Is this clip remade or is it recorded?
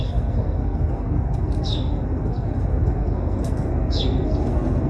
remade